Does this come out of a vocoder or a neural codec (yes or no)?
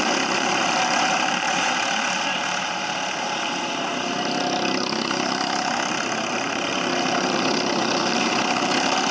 yes